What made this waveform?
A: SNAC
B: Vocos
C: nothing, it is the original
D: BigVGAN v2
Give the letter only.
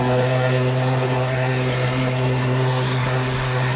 A